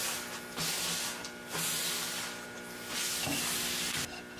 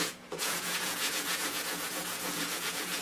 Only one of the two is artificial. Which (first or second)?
second